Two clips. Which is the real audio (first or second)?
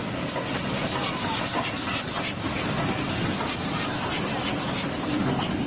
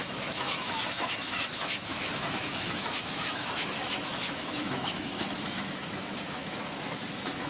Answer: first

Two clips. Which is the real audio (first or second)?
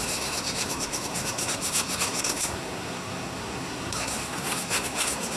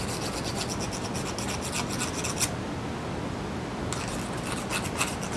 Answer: second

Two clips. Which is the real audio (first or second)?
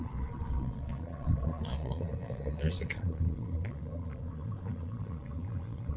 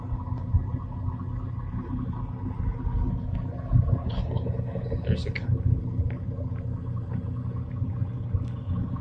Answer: second